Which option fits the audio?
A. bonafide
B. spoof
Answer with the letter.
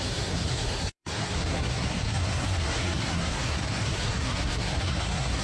B